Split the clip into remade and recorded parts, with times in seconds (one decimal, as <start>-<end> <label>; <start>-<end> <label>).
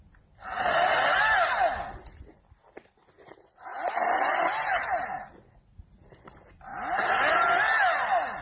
0.0-8.4 recorded